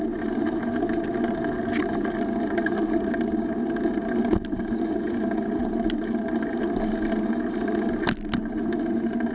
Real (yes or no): yes